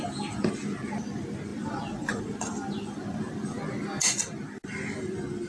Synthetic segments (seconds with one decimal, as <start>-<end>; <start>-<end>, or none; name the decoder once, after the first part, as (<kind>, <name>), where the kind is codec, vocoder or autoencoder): none